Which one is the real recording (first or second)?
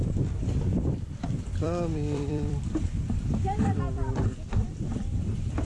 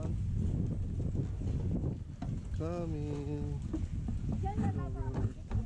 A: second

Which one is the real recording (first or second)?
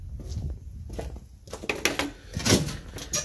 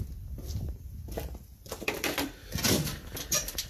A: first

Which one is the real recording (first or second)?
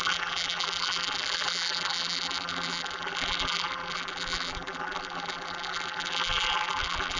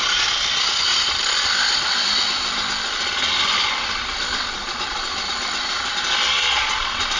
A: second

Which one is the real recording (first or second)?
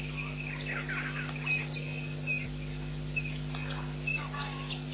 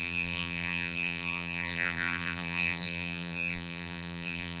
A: first